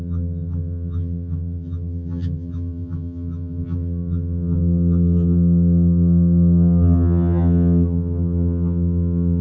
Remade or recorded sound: remade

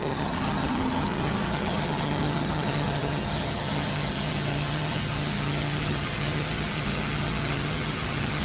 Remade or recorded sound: remade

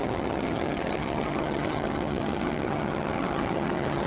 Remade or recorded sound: remade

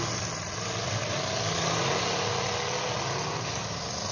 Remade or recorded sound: recorded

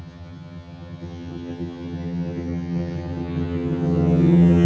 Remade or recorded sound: remade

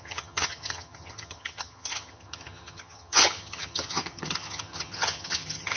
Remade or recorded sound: remade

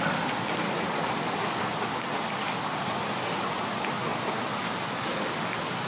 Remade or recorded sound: recorded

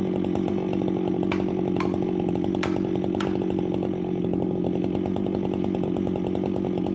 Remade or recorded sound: recorded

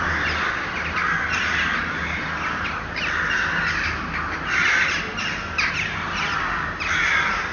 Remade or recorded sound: recorded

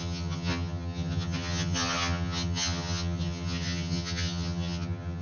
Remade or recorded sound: remade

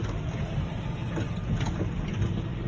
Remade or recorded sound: recorded